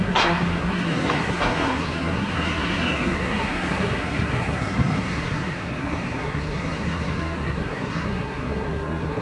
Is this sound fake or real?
fake